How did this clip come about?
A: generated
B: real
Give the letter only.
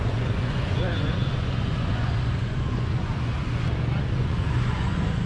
A